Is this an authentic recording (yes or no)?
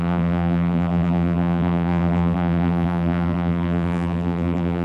no